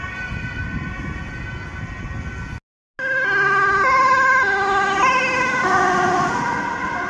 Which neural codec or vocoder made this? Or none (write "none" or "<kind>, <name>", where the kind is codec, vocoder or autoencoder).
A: none